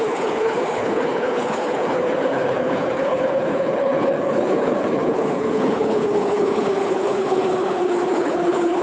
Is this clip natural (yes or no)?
no